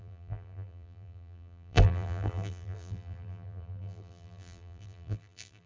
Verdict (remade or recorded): remade